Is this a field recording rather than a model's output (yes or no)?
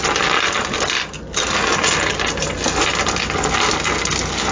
yes